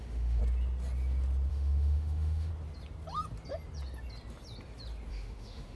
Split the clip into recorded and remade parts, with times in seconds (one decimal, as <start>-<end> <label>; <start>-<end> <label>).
0.0-0.4 remade; 0.4-1.5 recorded; 1.5-2.5 remade; 2.5-5.1 recorded; 5.1-5.8 remade